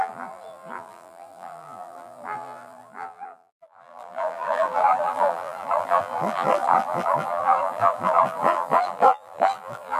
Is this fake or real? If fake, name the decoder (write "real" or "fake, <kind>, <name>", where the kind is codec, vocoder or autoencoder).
fake, vocoder, BigVGAN v2